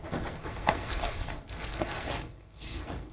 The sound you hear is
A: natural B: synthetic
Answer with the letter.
B